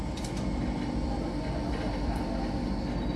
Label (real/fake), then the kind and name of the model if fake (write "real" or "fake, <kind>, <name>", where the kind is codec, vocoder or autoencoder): real